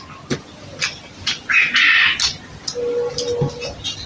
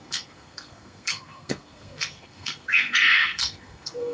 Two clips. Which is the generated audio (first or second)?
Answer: second